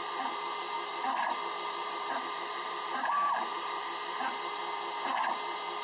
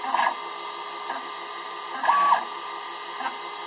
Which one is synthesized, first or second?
first